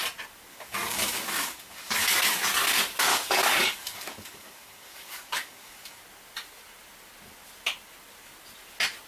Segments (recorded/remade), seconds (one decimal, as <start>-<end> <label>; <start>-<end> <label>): 0.0-0.5 recorded; 0.5-2.4 remade; 2.4-3.1 recorded; 3.1-6.0 remade; 6.0-9.1 recorded